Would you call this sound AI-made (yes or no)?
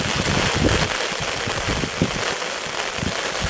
no